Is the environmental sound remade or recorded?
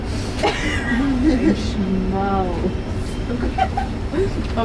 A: recorded